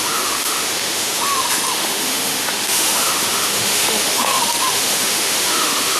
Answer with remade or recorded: remade